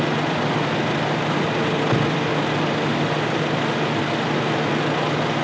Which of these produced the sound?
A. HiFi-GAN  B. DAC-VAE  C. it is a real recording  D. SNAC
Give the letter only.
C